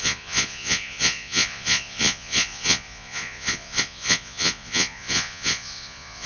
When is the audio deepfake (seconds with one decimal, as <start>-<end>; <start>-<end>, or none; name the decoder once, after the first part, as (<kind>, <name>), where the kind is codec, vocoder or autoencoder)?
0.0-6.3 (vocoder, Vocos)